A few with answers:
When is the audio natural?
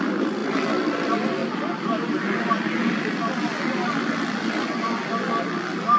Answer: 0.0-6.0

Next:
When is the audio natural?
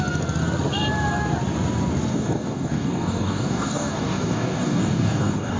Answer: 0.0-2.1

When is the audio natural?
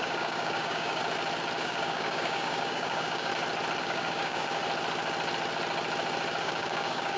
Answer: 1.0-1.6; 3.3-3.8; 4.6-6.4